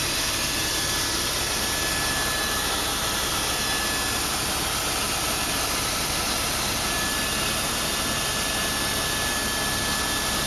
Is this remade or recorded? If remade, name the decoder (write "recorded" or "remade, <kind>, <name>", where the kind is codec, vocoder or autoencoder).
recorded